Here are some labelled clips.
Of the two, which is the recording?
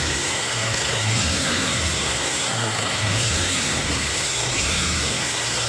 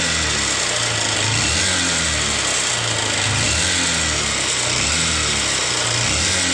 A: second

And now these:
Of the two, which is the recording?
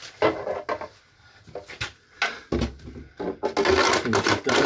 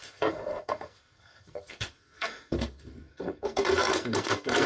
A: first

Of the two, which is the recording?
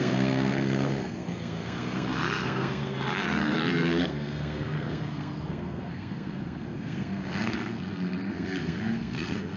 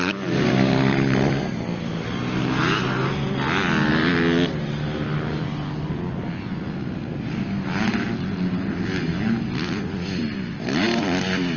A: second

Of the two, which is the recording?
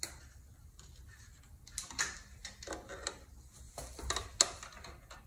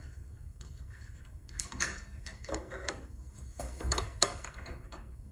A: first